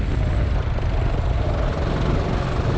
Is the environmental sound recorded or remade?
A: recorded